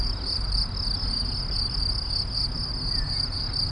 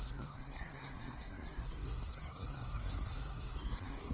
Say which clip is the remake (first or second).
second